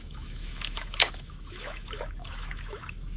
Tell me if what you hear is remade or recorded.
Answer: remade